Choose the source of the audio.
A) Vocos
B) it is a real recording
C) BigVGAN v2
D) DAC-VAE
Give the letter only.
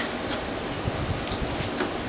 B